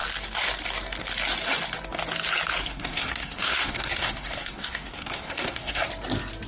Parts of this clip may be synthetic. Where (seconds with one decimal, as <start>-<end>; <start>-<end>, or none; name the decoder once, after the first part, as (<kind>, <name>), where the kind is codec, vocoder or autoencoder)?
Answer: 2.6-5.9 (codec, SNAC)